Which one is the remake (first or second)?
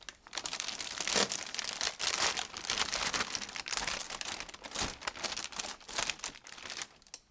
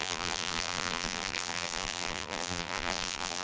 second